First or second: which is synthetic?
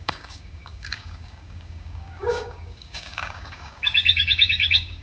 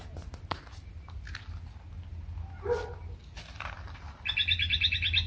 first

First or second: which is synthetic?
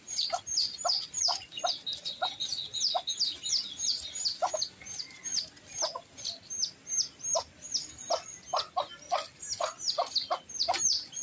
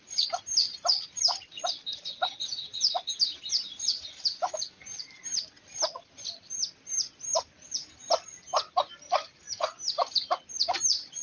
second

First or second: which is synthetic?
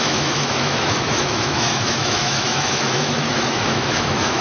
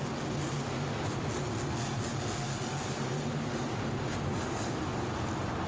first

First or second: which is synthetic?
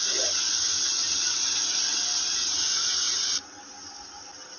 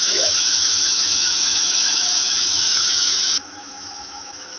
second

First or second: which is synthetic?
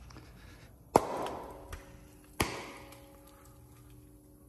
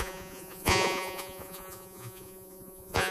second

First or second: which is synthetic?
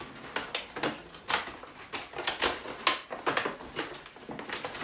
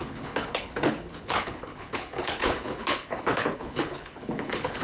second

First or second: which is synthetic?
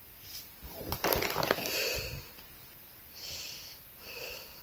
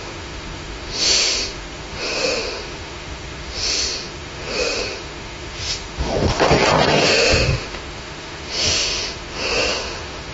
second